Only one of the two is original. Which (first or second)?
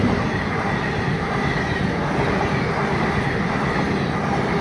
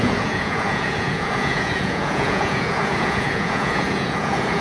first